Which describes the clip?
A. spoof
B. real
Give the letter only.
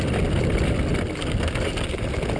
B